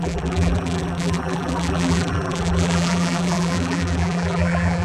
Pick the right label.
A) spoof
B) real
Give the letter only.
A